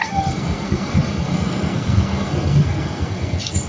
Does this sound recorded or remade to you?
remade